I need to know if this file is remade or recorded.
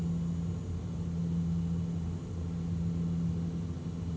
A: recorded